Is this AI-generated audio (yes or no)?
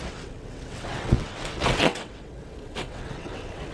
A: yes